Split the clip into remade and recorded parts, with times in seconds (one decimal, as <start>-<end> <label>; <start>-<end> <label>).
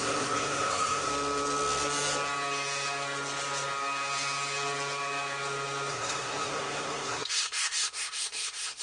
0.0-1.1 remade; 1.1-5.9 recorded; 5.9-8.8 remade